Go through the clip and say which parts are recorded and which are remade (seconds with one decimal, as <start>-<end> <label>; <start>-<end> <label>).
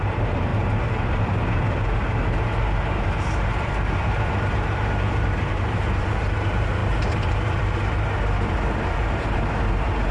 0.0-10.1 remade